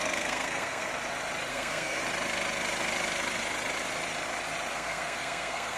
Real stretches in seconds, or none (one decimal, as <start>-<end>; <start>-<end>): 0.9-1.5; 2.0-4.7